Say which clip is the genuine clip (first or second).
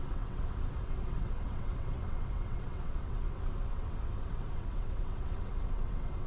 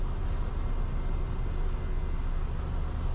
second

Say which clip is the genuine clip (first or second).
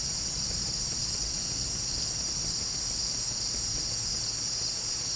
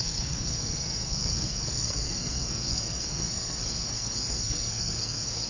first